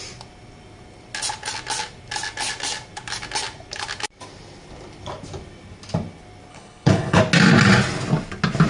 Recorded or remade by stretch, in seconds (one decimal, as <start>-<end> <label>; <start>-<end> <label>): 0.0-6.5 recorded; 6.5-7.2 remade; 7.2-8.7 recorded